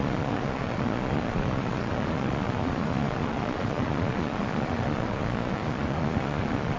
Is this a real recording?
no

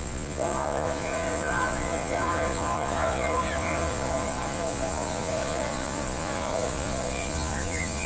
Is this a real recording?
no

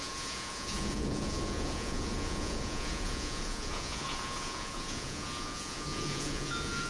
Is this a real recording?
no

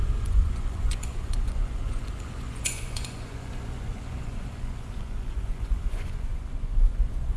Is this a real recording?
no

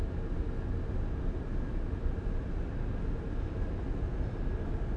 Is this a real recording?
yes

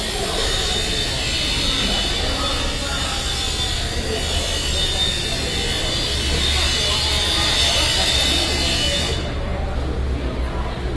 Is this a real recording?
yes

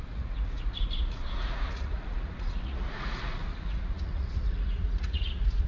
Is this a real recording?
no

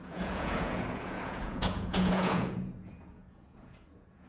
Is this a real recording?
no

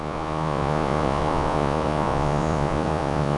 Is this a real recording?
no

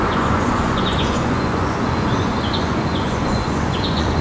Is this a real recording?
no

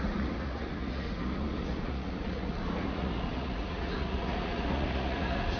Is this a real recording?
no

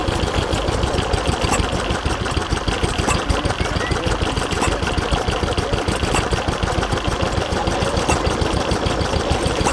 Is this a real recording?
yes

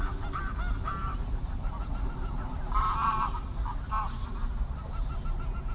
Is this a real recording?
yes